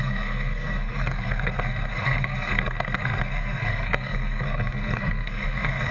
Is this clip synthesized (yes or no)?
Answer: yes